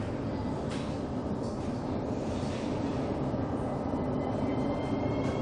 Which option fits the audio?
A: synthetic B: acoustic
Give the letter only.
B